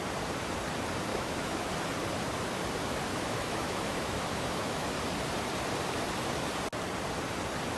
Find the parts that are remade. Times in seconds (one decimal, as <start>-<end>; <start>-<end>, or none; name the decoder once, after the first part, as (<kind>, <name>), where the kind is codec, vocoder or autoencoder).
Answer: 1.1-1.7 (autoencoder, DAC-VAE); 3.1-4.9